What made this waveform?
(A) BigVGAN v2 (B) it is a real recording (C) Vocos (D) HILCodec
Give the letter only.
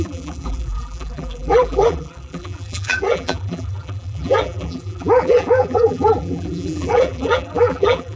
A